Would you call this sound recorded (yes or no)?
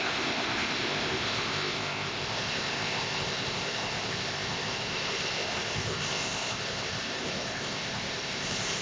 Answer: no